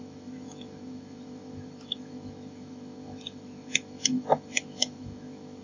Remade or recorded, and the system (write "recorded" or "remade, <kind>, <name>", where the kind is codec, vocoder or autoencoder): remade, autoencoder, DAC-VAE